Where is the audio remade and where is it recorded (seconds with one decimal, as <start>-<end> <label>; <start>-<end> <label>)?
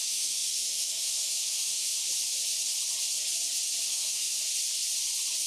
0.0-2.0 remade; 2.0-3.9 recorded; 3.9-4.5 remade; 4.5-5.5 recorded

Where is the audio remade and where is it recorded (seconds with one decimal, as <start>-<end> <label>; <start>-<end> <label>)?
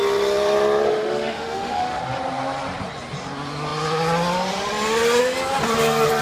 0.0-0.9 recorded; 0.9-2.0 remade; 2.0-6.2 recorded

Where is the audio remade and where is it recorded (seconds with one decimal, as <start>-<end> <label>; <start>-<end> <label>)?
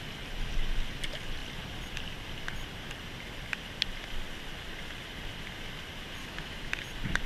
0.0-6.2 recorded; 6.2-6.7 remade; 6.7-7.3 recorded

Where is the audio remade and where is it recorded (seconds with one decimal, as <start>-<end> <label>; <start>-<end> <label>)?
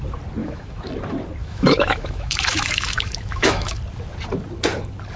0.0-0.4 recorded; 0.4-0.9 remade; 0.9-1.4 recorded; 1.4-3.8 remade; 3.8-5.2 recorded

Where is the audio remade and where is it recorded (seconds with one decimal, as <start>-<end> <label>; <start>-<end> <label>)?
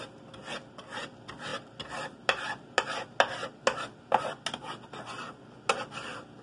0.0-6.4 recorded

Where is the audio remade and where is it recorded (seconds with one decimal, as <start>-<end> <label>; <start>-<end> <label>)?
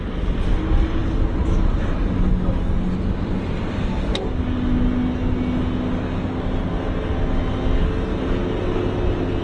0.0-9.4 recorded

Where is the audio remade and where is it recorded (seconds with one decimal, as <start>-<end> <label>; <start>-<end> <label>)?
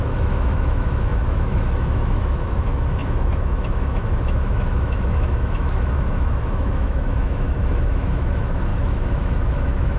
0.0-10.0 remade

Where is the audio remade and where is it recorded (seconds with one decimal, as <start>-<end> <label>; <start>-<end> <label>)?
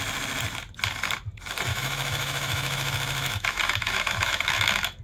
0.0-1.7 recorded; 1.7-5.0 remade